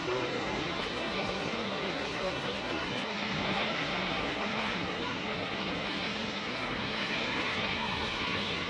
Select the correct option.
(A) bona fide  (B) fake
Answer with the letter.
B